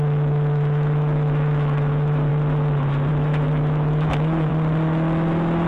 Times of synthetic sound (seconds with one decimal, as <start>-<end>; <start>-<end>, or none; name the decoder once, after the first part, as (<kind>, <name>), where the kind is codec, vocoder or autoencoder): 0.0-2.3 (autoencoder, DAC-VAE); 3.1-4.5